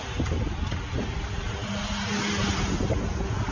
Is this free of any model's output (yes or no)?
yes